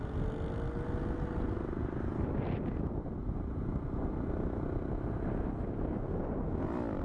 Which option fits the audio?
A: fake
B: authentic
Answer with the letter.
B